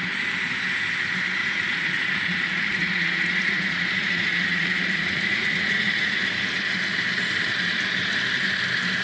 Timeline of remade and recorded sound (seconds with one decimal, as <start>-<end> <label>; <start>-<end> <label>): 0.0-1.4 recorded; 1.4-6.2 remade; 6.2-9.0 recorded